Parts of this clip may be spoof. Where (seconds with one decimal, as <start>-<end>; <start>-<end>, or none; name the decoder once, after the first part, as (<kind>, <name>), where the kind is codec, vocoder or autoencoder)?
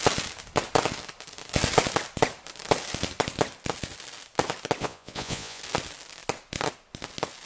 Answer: 4.8-5.6 (vocoder, Vocos)